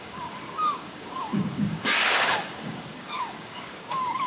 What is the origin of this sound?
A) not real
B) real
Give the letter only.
A